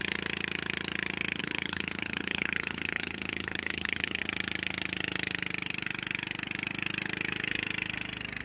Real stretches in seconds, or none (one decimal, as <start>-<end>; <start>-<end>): 0.0-1.4; 4.2-8.4